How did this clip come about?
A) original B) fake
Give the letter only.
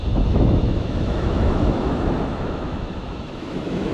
B